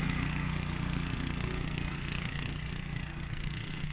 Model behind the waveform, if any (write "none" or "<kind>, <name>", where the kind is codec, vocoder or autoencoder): codec, SNAC